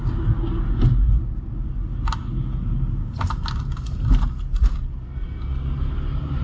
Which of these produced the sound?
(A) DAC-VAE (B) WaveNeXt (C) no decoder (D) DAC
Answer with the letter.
C